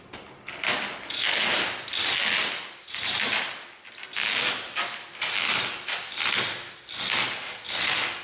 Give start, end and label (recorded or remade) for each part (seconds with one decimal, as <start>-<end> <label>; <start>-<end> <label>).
0.0-2.4 recorded; 2.4-3.3 remade; 3.3-8.2 recorded